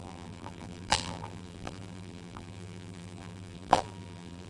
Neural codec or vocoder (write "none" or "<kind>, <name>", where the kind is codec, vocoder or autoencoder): vocoder, BigVGAN v2